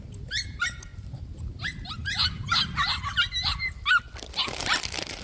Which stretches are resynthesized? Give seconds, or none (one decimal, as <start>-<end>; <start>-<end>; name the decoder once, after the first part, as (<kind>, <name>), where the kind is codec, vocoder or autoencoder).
none